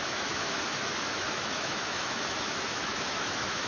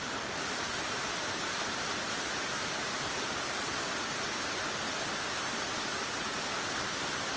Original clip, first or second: second